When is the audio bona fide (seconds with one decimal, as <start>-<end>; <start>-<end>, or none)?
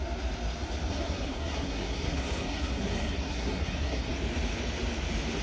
0.0-0.9; 4.1-5.4